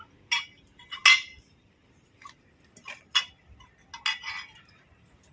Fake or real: real